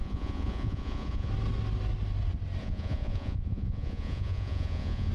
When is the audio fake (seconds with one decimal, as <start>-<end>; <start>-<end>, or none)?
0.0-1.3; 2.6-5.1